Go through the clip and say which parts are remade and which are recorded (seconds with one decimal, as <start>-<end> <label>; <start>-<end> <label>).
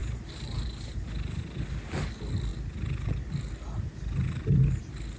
0.0-1.1 remade; 1.1-5.2 recorded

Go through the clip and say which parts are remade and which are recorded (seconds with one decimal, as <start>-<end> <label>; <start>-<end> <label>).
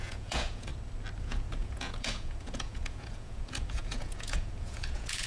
0.0-0.7 remade; 0.7-1.2 recorded; 1.2-5.3 remade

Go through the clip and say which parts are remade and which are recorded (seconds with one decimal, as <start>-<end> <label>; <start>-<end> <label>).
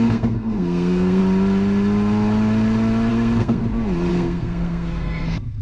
0.0-1.2 remade; 1.2-3.1 recorded; 3.1-3.6 remade; 3.6-4.1 recorded; 4.1-5.6 remade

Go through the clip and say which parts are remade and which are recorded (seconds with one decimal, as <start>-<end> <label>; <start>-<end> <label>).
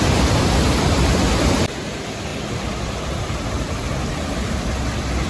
0.0-5.3 recorded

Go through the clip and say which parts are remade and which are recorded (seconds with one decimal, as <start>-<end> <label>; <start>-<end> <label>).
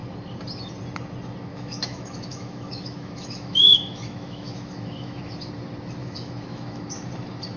0.0-1.5 recorded; 1.5-5.5 remade; 5.5-6.0 recorded; 6.0-6.8 remade; 6.8-7.6 recorded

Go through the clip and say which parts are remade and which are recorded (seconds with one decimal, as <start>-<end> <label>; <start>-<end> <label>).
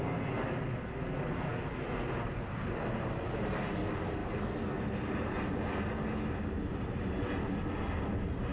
0.0-8.5 recorded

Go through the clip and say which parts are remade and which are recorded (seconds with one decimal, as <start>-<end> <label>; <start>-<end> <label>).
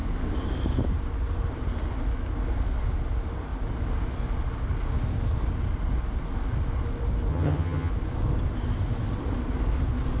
0.0-7.3 recorded; 7.3-7.9 remade; 7.9-10.2 recorded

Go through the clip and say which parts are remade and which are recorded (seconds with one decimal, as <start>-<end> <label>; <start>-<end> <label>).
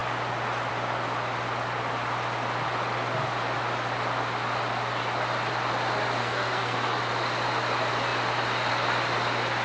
0.0-6.2 recorded; 6.2-7.0 remade; 7.0-9.6 recorded